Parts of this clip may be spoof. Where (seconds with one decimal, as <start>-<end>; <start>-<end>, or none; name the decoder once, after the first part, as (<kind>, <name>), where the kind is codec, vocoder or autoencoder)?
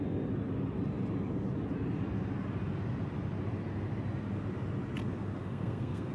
5.4-6.1 (codec, SNAC)